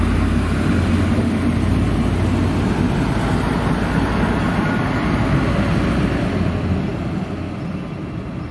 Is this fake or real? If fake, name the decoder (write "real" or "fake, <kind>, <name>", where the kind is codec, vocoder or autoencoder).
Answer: real